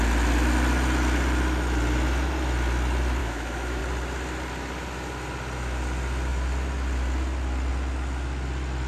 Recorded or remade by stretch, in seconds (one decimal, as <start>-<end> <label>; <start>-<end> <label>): 0.0-3.2 recorded; 3.2-3.8 remade; 3.8-8.9 recorded